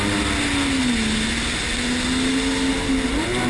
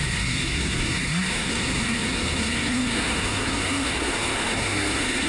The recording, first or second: first